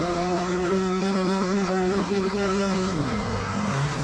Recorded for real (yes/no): no